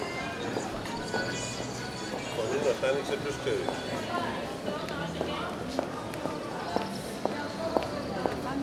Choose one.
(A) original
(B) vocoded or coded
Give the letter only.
A